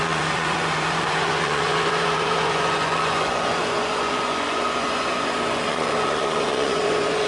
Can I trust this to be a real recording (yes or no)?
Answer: no